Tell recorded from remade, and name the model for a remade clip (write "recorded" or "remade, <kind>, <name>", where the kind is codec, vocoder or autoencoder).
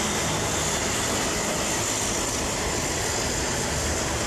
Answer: recorded